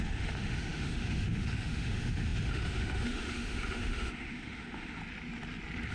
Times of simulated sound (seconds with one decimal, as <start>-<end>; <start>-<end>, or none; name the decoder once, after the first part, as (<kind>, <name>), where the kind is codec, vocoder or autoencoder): 0.0-5.0 (autoencoder, DAC-VAE)